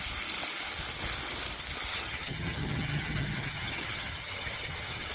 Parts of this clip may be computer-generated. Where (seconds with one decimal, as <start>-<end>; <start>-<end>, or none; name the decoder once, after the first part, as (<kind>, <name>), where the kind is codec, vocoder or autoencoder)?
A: 1.9-5.1 (vocoder, HiFi-GAN)